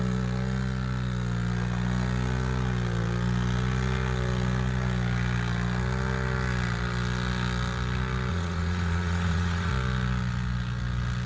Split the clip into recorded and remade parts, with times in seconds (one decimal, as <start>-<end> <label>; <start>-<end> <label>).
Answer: 0.0-8.3 recorded; 8.3-9.7 remade; 9.7-11.3 recorded